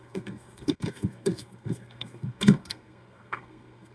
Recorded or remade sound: remade